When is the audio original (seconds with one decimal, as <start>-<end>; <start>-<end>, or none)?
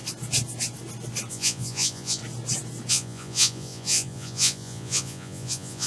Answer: 0.0-1.3; 2.2-2.9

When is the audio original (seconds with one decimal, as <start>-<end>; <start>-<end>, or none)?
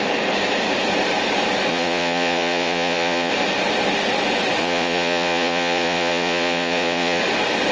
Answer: 0.0-1.7; 3.3-4.6; 7.2-7.7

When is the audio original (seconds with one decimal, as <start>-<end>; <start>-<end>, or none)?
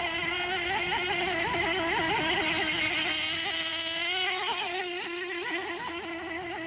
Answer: 0.0-6.7